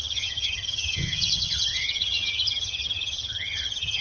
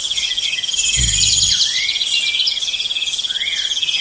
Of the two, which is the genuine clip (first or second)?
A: second